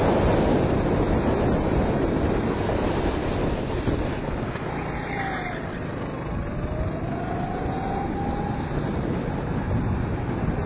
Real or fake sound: real